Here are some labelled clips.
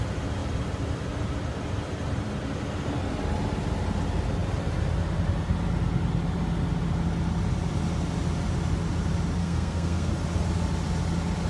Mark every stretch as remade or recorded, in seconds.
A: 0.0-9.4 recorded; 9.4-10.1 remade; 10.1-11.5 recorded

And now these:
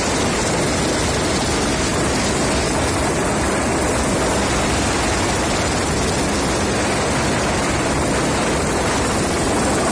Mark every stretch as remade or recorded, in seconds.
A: 0.0-9.9 recorded

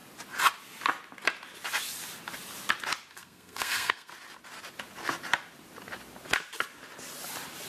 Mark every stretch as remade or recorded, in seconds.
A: 0.0-3.1 recorded; 3.1-4.1 remade; 4.1-7.7 recorded

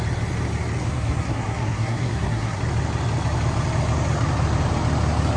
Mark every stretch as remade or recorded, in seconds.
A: 0.0-0.8 recorded; 0.8-2.6 remade; 2.6-5.4 recorded

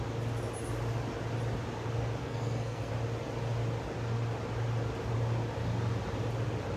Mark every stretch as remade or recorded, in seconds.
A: 0.0-2.2 recorded; 2.2-2.9 remade; 2.9-6.8 recorded

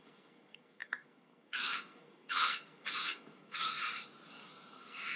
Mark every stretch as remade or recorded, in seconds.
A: 0.0-3.8 remade; 3.8-4.3 recorded; 4.3-5.2 remade

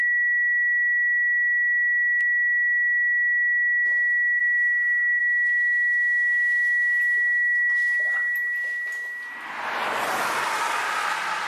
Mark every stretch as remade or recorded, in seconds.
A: 0.0-4.4 recorded; 4.4-5.2 remade; 5.2-11.5 recorded